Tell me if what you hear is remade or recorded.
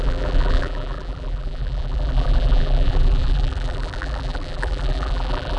remade